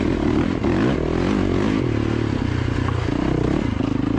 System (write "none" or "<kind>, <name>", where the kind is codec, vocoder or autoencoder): none